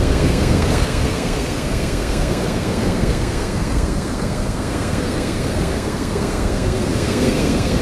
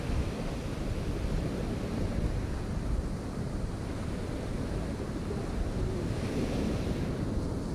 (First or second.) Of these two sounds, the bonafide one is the second